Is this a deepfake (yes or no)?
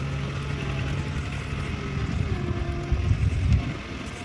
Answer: no